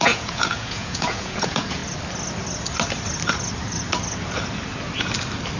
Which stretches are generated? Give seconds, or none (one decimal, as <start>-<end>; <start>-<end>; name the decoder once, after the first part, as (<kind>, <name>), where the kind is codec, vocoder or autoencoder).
0.0-1.8 (vocoder, Vocos)

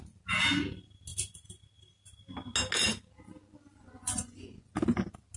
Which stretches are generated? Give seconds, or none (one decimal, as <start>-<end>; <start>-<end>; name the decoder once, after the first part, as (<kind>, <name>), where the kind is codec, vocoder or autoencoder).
3.8-4.7 (vocoder, Vocos)

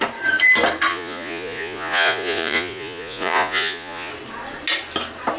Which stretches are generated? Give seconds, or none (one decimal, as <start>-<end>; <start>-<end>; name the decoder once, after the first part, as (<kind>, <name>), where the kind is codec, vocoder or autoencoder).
0.9-4.1 (vocoder, Vocos)

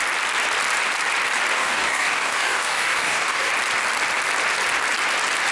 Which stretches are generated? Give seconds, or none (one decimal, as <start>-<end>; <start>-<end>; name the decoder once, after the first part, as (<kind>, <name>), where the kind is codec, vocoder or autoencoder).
1.5-3.5 (codec, DAC)

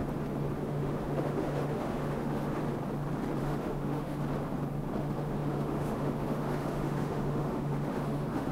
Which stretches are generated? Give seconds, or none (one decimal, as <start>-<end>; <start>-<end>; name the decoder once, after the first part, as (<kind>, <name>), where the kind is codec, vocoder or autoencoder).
0.6-2.6 (autoencoder, DAC-VAE); 3.4-4.2; 5.0-8.5

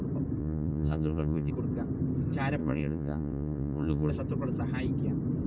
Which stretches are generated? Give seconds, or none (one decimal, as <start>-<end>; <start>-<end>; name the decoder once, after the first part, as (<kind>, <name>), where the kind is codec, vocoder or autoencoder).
0.4-1.5 (vocoder, Vocos); 2.6-4.1